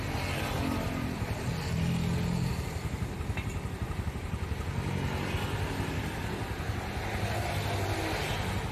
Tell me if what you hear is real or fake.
real